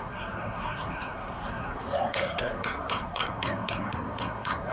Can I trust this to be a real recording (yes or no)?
no